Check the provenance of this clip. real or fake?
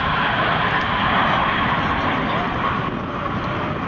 real